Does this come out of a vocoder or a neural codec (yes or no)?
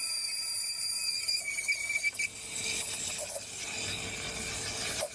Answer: no